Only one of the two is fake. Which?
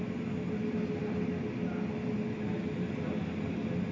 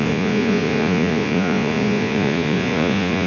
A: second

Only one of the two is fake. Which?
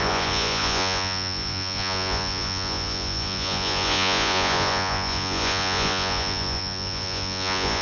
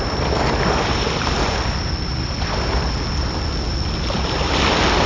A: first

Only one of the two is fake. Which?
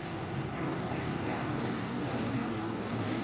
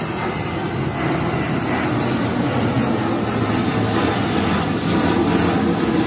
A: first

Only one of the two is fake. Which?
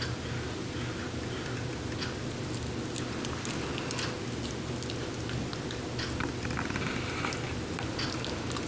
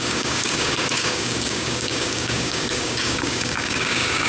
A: second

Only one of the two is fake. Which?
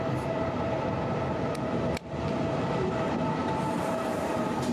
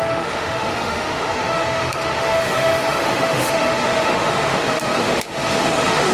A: second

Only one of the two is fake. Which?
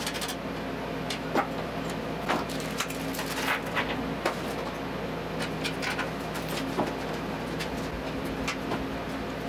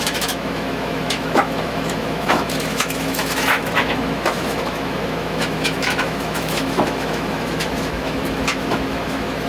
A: second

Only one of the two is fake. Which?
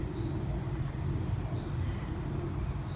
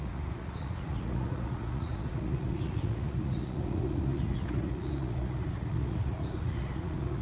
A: second